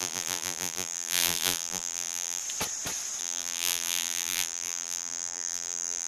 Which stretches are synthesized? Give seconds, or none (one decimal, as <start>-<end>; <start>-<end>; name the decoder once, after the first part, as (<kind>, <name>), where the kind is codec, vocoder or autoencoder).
0.0-2.4 (vocoder, BigVGAN v2); 3.2-6.1